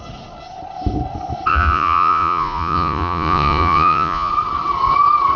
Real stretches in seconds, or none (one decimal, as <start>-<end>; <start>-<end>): 0.0-1.5; 4.3-5.4